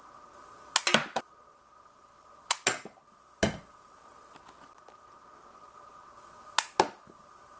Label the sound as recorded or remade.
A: recorded